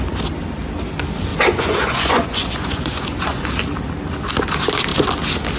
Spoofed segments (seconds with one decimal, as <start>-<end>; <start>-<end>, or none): 1.3-3.5